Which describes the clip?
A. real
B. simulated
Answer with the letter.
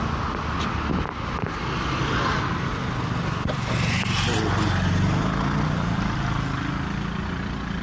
A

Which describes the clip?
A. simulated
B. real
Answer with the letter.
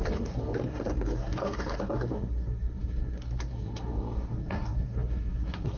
A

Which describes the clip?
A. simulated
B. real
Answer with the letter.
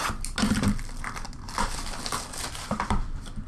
B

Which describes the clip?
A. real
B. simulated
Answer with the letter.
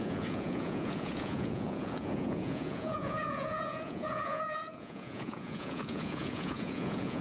B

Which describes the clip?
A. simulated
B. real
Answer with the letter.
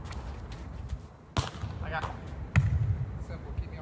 B